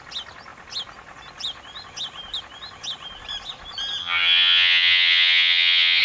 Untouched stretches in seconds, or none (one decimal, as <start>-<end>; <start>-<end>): 0.0-4.0